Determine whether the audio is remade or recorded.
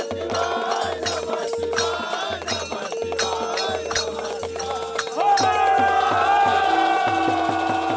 recorded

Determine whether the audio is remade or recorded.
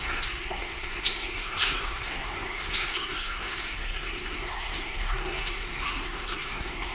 remade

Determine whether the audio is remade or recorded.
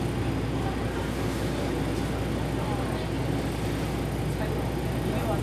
recorded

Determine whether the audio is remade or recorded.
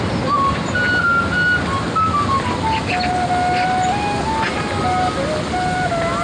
recorded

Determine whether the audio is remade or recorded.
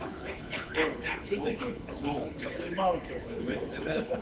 remade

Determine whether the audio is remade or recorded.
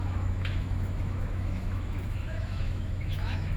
remade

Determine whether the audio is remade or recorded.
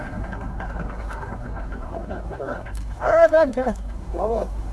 remade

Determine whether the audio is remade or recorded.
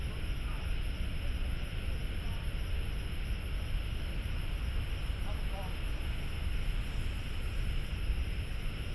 recorded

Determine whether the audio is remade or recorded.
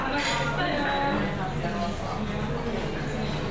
recorded